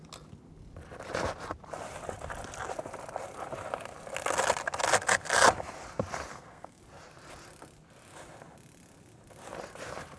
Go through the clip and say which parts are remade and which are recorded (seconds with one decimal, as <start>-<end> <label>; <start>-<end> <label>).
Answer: 0.0-6.3 recorded; 6.3-6.8 remade; 6.8-10.2 recorded